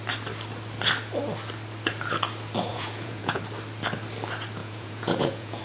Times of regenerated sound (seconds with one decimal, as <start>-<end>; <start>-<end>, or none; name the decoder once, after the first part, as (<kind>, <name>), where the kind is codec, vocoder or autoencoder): 2.7-3.4 (vocoder, Vocos); 4.6-5.6